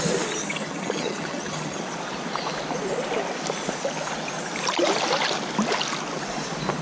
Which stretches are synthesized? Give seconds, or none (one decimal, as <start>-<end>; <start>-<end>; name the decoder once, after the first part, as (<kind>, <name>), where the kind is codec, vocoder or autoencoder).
0.4-1.8 (vocoder, HiFi-GAN)